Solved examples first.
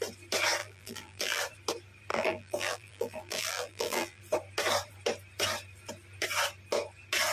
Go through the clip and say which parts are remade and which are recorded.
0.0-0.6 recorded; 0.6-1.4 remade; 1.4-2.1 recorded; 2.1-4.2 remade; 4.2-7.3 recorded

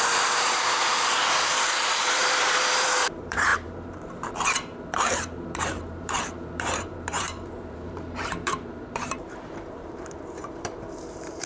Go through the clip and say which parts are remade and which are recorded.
0.0-11.5 remade

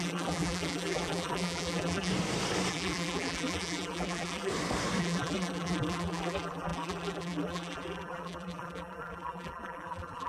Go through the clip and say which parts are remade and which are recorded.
0.0-2.1 remade; 2.1-2.7 recorded; 2.7-4.5 remade; 4.5-5.0 recorded; 5.0-10.3 remade

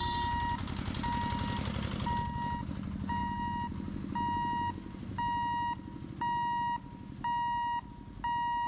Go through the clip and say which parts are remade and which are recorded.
0.0-8.7 recorded

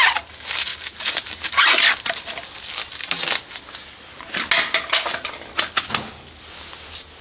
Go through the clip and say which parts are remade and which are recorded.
0.0-0.7 recorded; 0.7-1.3 remade; 1.3-7.2 recorded

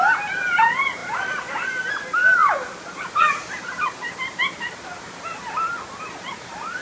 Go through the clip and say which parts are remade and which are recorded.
0.0-1.0 recorded; 1.0-1.9 remade; 1.9-2.4 recorded; 2.4-3.7 remade; 3.7-6.8 recorded

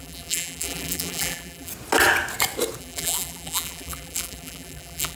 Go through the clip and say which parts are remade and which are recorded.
0.0-1.7 remade; 1.7-2.8 recorded; 2.8-5.2 remade